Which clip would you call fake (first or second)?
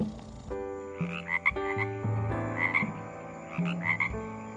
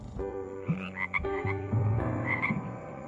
second